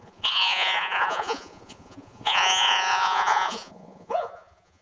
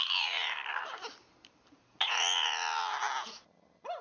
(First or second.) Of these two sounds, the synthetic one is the first